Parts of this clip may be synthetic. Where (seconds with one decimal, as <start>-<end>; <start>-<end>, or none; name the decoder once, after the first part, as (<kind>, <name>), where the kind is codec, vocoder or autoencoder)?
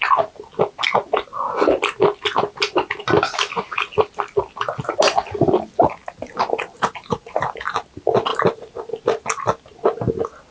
6.0-7.6 (vocoder, BigVGAN v2); 8.3-8.9